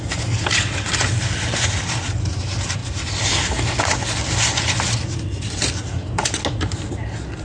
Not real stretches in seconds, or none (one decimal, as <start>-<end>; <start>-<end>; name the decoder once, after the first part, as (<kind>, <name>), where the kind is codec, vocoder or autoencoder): 2.8-3.4 (vocoder, BigVGAN v2)